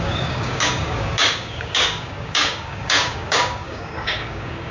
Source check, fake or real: fake